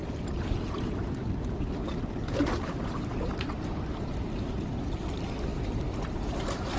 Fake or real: real